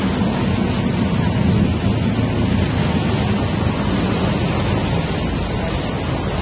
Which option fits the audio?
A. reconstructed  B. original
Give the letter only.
B